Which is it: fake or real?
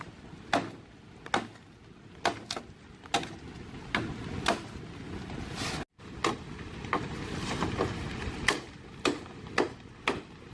real